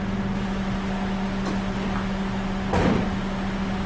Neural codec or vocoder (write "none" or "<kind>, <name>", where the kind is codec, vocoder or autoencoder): none